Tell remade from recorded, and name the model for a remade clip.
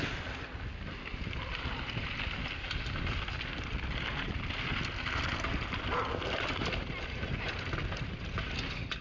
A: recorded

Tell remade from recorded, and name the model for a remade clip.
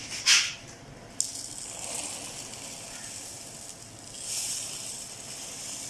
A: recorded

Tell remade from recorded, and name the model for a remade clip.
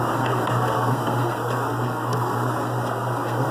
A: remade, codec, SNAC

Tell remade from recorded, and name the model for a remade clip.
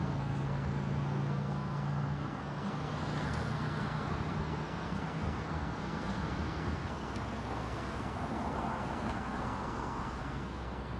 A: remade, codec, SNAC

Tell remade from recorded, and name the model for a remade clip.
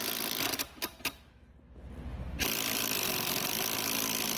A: recorded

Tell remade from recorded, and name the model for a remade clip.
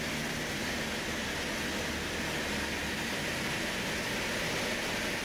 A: recorded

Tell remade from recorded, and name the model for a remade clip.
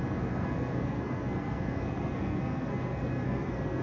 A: remade, codec, SNAC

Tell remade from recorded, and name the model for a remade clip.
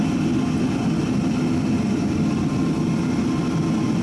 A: recorded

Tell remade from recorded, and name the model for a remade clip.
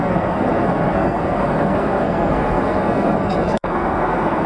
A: remade, codec, SNAC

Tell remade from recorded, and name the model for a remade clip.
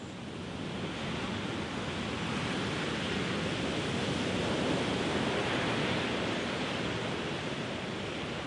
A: recorded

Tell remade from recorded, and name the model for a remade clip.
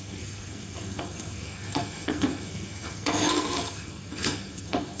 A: remade, codec, SNAC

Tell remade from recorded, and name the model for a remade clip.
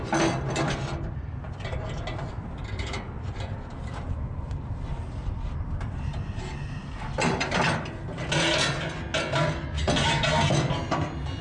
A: recorded